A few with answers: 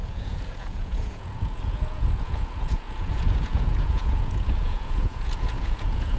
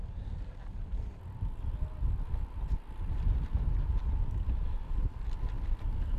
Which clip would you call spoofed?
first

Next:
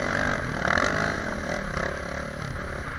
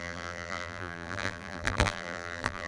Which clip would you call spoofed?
second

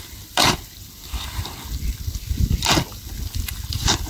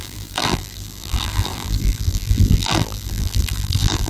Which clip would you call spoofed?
second